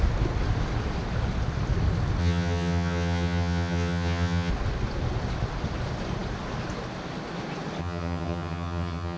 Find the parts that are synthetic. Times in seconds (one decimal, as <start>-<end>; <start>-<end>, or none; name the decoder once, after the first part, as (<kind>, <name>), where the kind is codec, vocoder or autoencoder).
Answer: 2.2-4.5 (vocoder, HiFi-GAN); 7.8-9.2